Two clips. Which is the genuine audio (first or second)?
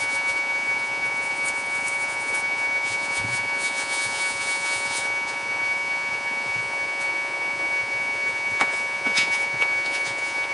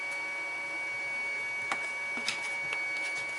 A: second